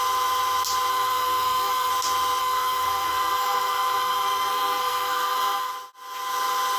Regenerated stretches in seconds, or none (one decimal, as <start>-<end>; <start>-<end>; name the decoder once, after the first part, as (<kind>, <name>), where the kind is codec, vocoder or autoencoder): 0.9-1.9 (codec, SNAC); 2.4-5.7